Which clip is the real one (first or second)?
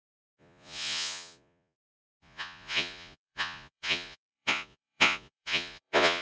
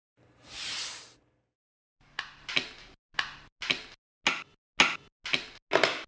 second